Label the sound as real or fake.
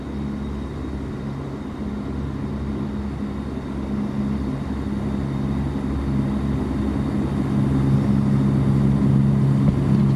real